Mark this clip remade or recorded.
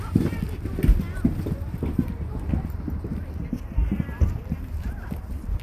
recorded